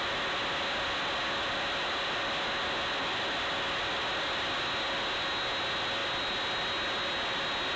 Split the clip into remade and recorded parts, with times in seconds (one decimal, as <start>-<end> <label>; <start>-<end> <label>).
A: 0.0-7.8 recorded

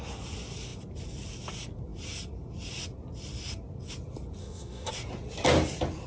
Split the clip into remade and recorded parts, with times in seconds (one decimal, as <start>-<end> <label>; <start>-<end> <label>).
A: 0.0-4.4 recorded; 4.4-4.9 remade; 4.9-6.1 recorded

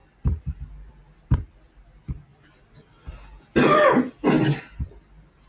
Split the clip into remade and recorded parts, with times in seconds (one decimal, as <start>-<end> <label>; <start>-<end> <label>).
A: 0.0-5.5 recorded

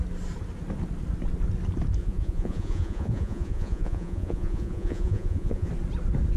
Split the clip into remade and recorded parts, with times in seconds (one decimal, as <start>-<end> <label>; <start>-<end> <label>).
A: 0.0-2.0 recorded; 2.0-5.7 remade; 5.7-6.4 recorded

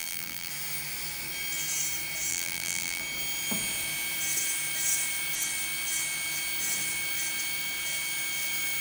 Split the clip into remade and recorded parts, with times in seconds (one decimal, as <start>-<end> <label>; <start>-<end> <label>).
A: 0.0-0.5 remade; 0.5-2.3 recorded; 2.3-3.0 remade; 3.0-8.8 recorded

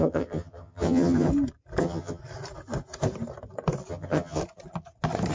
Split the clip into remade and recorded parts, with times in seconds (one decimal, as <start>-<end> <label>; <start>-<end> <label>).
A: 0.0-1.3 remade; 1.3-1.8 recorded; 1.8-2.2 remade; 2.2-3.9 recorded; 3.9-4.4 remade; 4.4-5.3 recorded

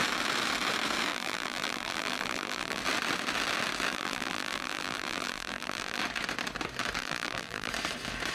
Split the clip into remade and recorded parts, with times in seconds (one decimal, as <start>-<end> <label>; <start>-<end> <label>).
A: 0.0-1.1 recorded; 1.1-2.8 remade; 2.8-3.9 recorded; 3.9-6.0 remade; 6.0-7.0 recorded; 7.0-7.7 remade; 7.7-8.3 recorded

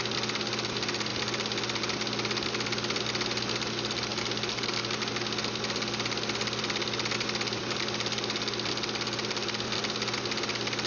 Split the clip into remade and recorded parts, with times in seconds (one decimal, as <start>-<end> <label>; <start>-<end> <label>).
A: 0.0-10.9 recorded